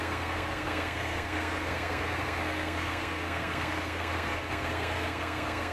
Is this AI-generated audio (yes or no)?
yes